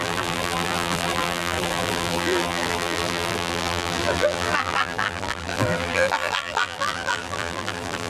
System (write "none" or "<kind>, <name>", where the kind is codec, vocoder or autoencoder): vocoder, BigVGAN v2